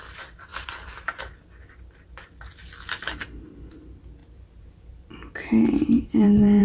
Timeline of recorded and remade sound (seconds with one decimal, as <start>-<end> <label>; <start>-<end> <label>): 0.0-0.5 recorded; 0.5-1.2 remade; 1.2-4.2 recorded; 4.2-6.6 remade